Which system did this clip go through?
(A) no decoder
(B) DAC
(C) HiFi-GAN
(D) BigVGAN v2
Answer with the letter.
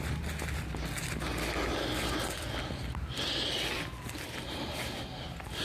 A